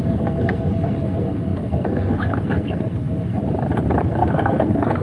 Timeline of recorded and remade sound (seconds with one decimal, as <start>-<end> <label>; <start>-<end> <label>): 0.0-3.4 remade; 3.4-4.0 recorded; 4.0-5.0 remade